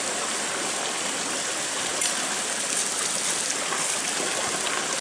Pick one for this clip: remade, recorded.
recorded